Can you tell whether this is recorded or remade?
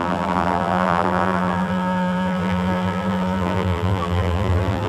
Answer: remade